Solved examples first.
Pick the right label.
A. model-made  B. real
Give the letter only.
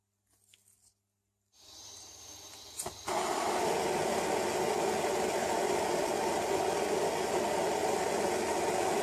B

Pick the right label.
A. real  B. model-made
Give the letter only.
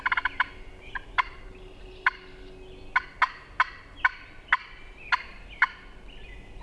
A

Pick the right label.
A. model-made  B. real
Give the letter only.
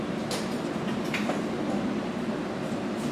B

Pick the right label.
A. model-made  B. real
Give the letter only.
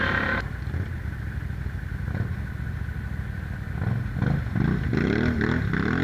B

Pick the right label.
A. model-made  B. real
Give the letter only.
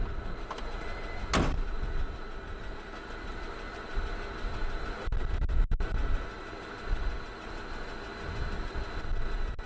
B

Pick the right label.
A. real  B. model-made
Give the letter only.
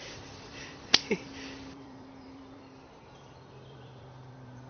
B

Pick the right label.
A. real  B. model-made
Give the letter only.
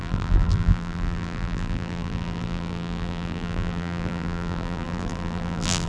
B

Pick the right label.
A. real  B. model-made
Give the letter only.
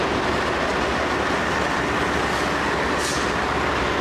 A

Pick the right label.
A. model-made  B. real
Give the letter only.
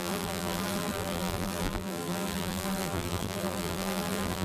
A